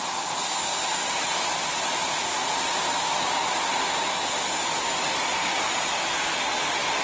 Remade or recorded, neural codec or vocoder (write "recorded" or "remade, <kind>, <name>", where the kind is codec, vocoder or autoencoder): recorded